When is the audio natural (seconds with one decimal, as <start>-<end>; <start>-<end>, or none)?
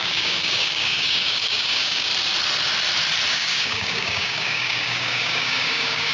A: 2.1-3.3